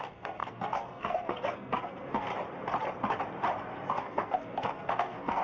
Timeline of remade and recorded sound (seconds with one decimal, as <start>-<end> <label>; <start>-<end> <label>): 0.0-2.3 remade; 2.3-3.9 recorded; 3.9-5.4 remade